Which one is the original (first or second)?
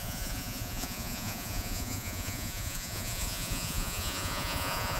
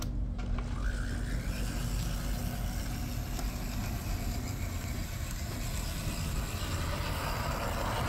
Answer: second